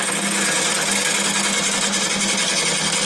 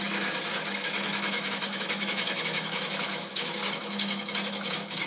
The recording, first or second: first